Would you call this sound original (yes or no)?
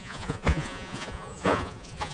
no